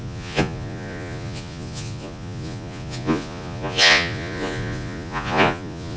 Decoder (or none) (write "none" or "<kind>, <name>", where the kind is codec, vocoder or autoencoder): vocoder, Vocos